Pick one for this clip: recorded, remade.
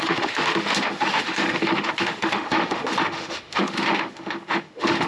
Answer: remade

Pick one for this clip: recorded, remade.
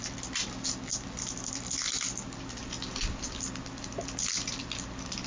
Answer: recorded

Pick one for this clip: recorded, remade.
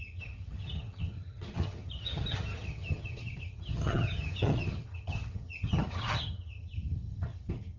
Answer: remade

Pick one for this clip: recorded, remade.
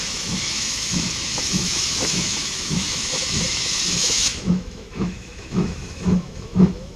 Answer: remade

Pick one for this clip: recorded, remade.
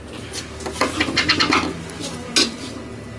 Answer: recorded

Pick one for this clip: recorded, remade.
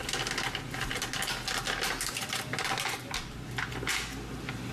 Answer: recorded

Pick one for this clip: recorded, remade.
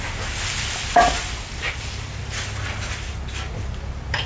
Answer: recorded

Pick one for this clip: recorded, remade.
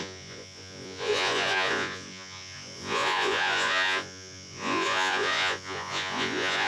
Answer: remade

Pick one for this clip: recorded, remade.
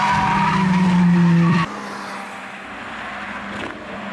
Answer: recorded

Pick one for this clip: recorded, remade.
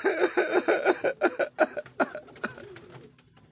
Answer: recorded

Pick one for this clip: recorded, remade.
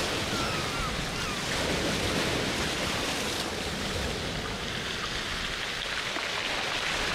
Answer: recorded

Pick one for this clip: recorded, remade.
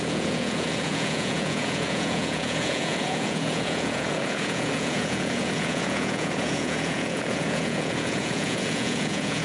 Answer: remade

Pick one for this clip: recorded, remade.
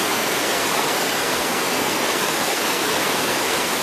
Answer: remade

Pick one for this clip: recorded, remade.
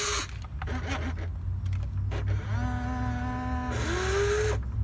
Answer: recorded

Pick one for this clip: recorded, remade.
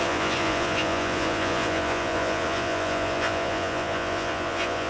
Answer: remade